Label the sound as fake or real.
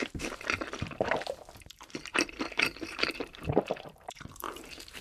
fake